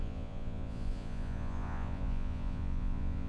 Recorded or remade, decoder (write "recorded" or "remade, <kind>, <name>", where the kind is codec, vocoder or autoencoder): remade, vocoder, Vocos